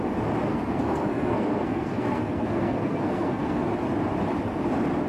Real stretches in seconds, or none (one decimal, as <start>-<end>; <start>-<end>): 0.0-0.5; 3.6-5.1